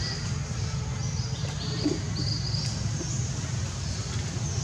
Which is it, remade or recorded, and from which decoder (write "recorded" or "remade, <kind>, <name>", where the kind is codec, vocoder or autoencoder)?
recorded